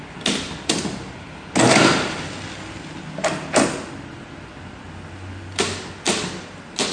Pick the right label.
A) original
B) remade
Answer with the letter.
A